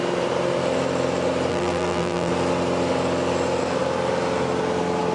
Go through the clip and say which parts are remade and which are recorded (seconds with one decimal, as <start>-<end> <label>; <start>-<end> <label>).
0.0-1.5 recorded; 1.5-2.3 remade; 2.3-5.1 recorded

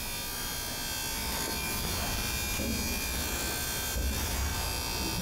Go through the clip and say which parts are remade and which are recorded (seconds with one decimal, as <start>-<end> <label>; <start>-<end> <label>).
0.0-5.2 recorded

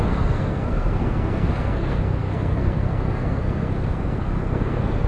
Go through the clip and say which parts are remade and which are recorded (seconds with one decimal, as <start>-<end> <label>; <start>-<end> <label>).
0.0-5.1 remade

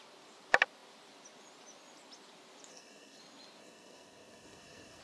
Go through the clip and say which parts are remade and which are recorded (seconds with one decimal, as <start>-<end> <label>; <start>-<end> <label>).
0.0-2.7 recorded; 2.7-3.2 remade; 3.2-3.6 recorded; 3.6-5.0 remade

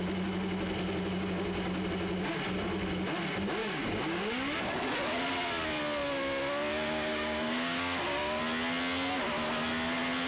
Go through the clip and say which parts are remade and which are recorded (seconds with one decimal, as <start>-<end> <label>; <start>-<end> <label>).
0.0-3.6 recorded; 3.6-4.2 remade; 4.2-6.7 recorded; 6.7-8.4 remade; 8.4-10.3 recorded